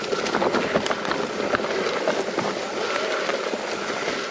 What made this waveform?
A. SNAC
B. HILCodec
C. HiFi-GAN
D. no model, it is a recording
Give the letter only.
D